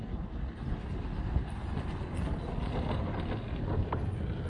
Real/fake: real